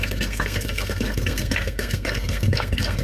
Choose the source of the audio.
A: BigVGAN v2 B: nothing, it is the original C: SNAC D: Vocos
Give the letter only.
C